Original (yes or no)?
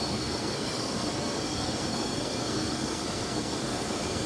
no